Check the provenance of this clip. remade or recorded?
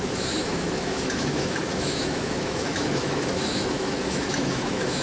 remade